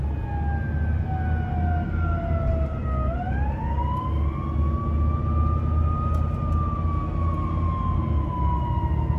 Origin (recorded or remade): recorded